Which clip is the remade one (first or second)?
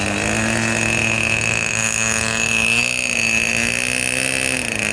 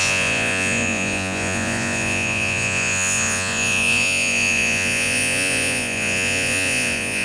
second